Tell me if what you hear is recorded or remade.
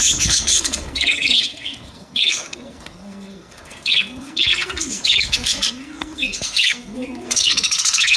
remade